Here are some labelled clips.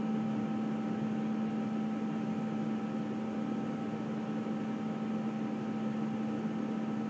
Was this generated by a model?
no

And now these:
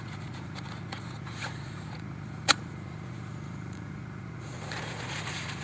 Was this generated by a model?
yes